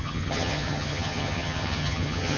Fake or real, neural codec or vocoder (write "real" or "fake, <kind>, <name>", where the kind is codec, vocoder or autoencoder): fake, vocoder, HiFi-GAN